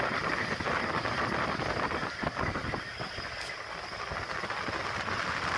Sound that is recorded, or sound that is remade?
recorded